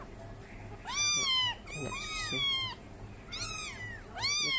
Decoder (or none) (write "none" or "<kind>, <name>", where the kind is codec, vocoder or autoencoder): none